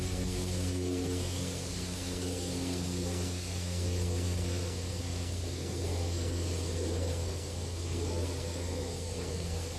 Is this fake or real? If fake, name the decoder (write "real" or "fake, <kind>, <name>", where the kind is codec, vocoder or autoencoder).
fake, codec, SNAC